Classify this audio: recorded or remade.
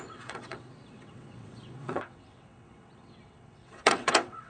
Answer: remade